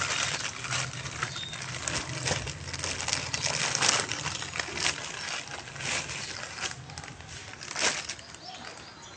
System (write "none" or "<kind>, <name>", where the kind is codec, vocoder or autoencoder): none